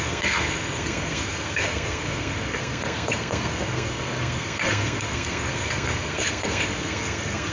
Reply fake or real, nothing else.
fake